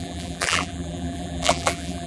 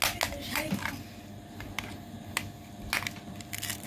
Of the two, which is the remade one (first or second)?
first